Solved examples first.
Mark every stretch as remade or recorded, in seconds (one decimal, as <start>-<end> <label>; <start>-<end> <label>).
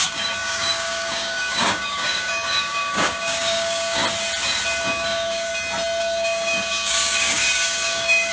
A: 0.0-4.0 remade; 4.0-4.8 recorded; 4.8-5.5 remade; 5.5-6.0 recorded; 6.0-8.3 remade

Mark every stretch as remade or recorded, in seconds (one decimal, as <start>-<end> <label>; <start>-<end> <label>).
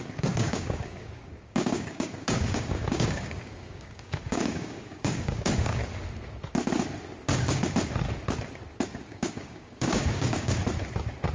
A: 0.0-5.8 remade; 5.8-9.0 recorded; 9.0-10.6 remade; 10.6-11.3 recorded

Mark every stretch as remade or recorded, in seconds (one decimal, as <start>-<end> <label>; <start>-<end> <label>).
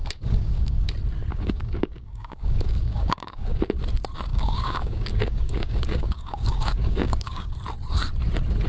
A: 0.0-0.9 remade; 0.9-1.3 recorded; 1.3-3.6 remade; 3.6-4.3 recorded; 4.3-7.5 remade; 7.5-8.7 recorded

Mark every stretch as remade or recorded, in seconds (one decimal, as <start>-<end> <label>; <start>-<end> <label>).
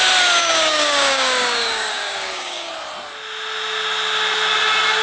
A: 0.0-0.4 recorded; 0.4-2.7 remade; 2.7-5.0 recorded